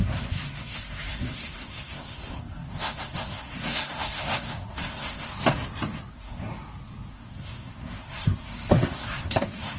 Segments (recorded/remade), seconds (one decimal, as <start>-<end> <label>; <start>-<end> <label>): 0.0-5.3 remade; 5.3-6.1 recorded; 6.1-6.5 remade; 6.5-7.1 recorded; 7.1-9.8 remade